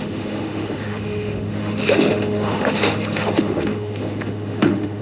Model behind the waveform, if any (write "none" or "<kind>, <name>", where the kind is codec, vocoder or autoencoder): autoencoder, DAC-VAE